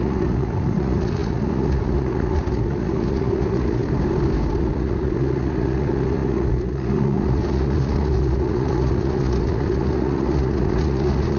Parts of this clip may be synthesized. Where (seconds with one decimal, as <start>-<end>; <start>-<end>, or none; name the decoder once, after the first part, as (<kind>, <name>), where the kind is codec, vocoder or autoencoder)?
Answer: 0.0-3.8 (vocoder, Vocos); 4.6-11.4